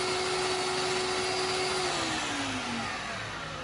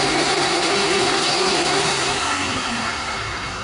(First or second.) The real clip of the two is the first